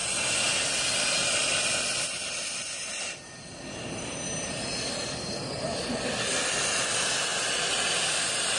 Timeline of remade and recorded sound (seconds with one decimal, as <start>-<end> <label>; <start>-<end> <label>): 0.0-8.6 recorded